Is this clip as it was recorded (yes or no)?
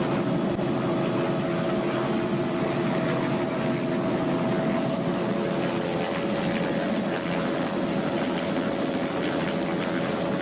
yes